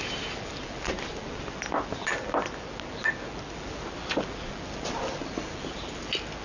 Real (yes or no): yes